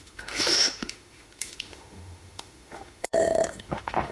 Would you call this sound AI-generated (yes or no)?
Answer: yes